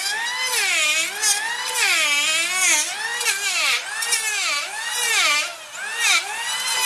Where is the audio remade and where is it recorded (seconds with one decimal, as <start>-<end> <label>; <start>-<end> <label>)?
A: 0.0-6.9 recorded